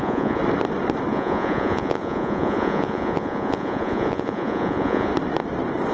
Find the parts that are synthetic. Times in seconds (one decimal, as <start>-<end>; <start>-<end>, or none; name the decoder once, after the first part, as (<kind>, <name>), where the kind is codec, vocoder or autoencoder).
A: 0.0-0.4 (vocoder, Vocos); 1.1-5.1